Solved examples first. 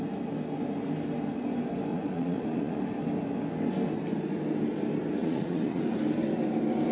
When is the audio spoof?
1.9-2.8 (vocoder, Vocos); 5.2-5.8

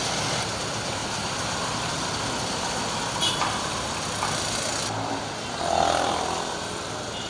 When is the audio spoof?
none

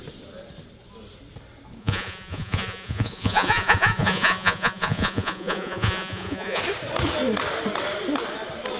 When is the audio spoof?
1.8-6.6 (vocoder, Vocos)

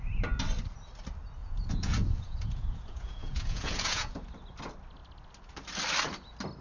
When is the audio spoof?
1.4-4.2 (vocoder, Vocos)

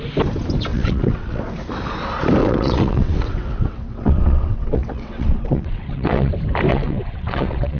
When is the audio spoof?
0.7-1.4 (vocoder, WaveNeXt); 2.4-6.3; 6.7-7.8